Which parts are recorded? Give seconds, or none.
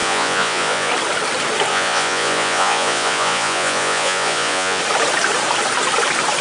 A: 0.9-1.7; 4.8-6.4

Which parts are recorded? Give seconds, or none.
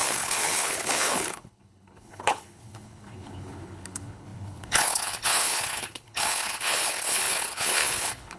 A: none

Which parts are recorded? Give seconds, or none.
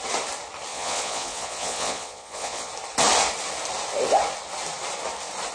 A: 0.0-0.7; 2.7-5.5